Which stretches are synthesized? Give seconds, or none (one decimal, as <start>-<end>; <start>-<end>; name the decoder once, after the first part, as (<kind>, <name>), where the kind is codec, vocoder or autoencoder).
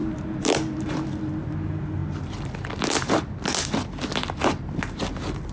none